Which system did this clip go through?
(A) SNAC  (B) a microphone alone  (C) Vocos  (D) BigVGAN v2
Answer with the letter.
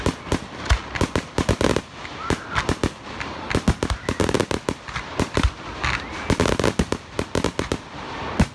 B